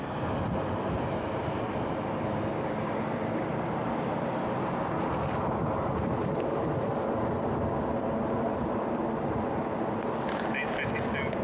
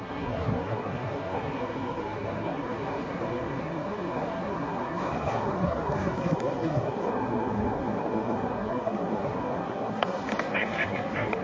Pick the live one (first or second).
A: first